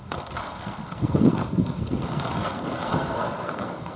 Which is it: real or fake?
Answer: fake